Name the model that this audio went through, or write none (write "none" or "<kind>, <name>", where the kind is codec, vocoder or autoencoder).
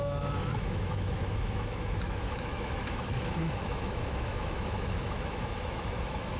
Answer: autoencoder, DAC-VAE